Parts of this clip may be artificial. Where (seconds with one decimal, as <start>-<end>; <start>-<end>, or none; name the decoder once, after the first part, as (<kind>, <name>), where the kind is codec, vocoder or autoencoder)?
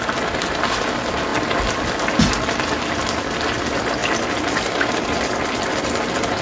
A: none